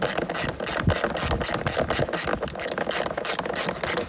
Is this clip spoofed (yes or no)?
no